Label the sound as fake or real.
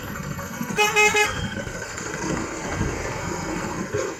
fake